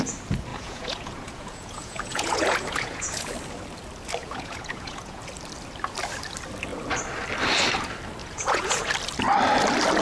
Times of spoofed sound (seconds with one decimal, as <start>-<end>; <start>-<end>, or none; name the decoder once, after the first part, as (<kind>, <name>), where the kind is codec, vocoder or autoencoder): 0.5-3.3 (vocoder, Vocos); 4.2-5.2; 8.2-8.9